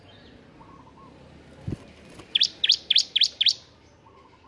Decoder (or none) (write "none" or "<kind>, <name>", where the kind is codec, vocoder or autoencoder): none